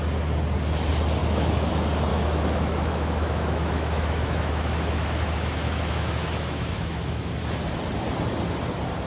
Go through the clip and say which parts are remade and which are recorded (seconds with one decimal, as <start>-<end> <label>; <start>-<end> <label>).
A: 0.0-1.2 recorded; 1.2-1.7 remade; 1.7-2.1 recorded; 2.1-7.3 remade; 7.3-9.1 recorded